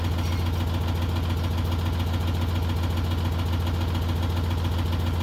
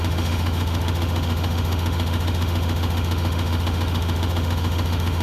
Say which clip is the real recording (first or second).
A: first